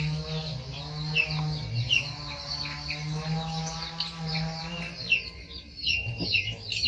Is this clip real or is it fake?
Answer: real